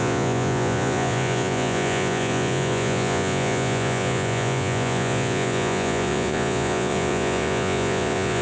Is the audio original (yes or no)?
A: no